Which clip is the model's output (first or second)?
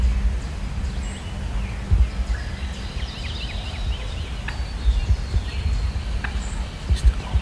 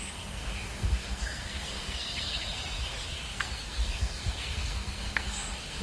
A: second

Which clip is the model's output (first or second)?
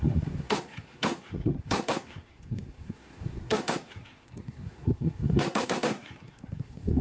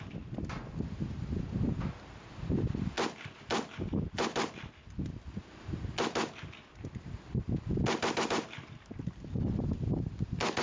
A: first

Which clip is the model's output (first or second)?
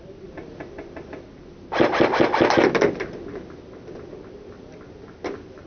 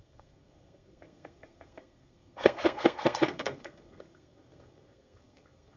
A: second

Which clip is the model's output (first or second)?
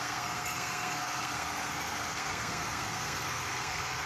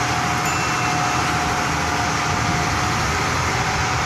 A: first